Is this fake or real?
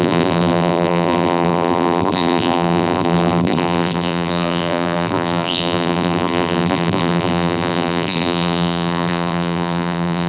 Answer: fake